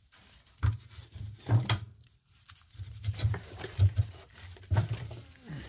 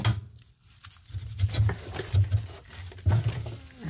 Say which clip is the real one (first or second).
second